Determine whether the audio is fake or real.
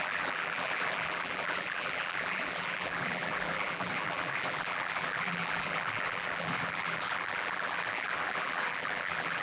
fake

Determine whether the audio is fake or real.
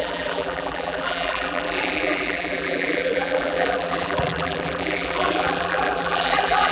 fake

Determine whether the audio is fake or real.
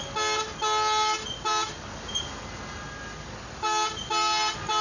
real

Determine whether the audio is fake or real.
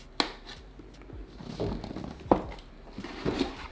real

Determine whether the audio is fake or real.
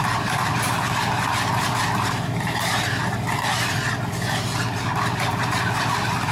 real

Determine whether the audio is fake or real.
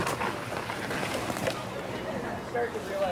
real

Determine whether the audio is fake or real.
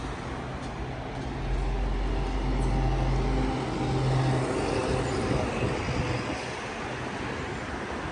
real